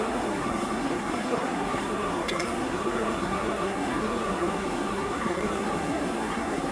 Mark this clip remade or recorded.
remade